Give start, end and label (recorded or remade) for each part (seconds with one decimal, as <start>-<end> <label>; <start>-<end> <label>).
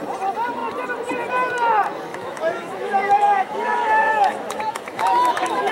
0.0-2.1 recorded; 2.1-5.7 remade